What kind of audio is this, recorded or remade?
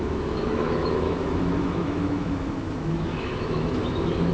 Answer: remade